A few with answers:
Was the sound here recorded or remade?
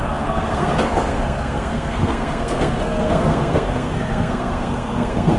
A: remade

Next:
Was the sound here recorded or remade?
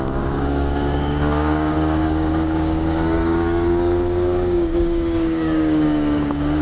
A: remade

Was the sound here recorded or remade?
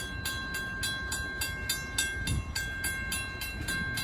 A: recorded